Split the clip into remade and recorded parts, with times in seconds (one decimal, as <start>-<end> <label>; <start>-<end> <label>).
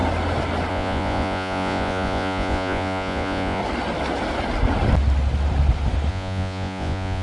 0.0-0.7 recorded; 0.7-3.6 remade; 3.6-6.1 recorded; 6.1-7.2 remade